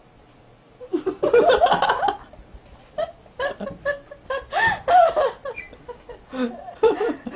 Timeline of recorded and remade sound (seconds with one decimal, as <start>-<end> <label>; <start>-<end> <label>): 0.0-7.4 recorded